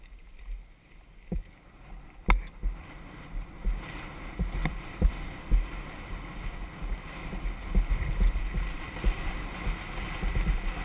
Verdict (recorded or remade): recorded